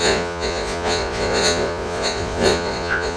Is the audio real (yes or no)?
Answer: no